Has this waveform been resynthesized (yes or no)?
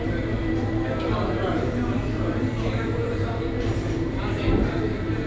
yes